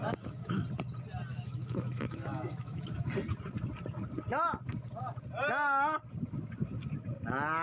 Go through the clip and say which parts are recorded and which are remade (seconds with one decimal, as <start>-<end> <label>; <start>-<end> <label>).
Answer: 0.0-0.6 remade; 0.6-1.3 recorded; 1.3-3.1 remade; 3.1-7.6 recorded